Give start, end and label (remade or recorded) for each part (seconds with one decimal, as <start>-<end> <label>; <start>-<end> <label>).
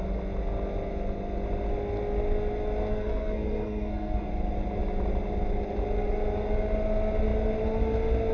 0.0-2.9 recorded; 2.9-4.3 remade; 4.3-8.3 recorded